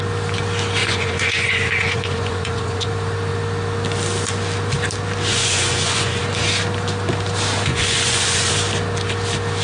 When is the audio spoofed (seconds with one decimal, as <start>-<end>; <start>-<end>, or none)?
0.8-2.9; 5.3-6.2; 7.7-8.5